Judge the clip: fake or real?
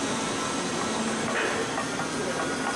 real